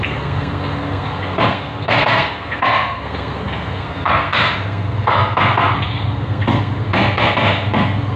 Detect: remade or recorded remade